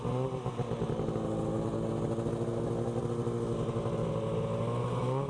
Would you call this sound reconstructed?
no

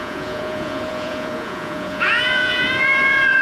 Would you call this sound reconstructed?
yes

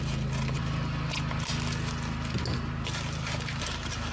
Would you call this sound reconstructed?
no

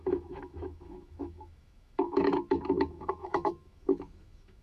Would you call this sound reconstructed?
yes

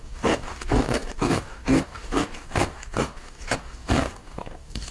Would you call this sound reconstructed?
yes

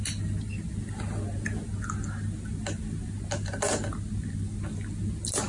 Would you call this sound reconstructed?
no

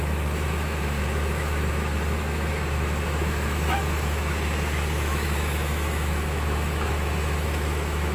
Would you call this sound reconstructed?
yes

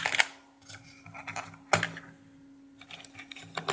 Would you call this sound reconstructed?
no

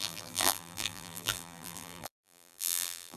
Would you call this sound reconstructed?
yes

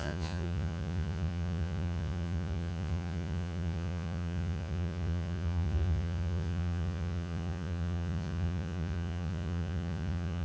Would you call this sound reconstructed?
yes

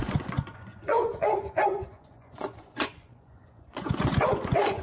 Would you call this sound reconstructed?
yes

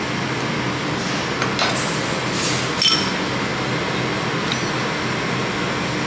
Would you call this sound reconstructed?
no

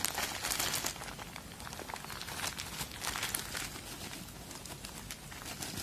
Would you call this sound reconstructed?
no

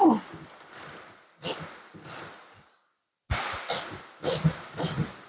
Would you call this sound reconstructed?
no